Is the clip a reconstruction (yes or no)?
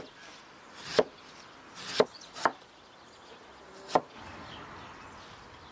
no